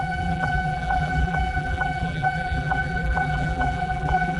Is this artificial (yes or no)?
yes